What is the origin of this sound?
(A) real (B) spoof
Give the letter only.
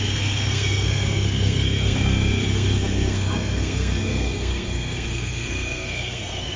B